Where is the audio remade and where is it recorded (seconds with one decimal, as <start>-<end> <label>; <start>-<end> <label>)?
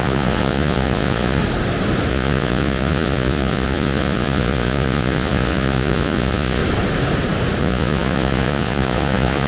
0.0-1.4 remade; 1.4-2.1 recorded; 2.1-6.6 remade; 6.6-7.6 recorded; 7.6-9.5 remade